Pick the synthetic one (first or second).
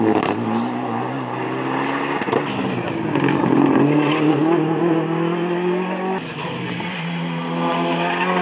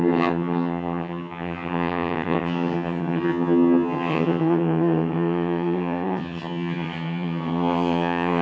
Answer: second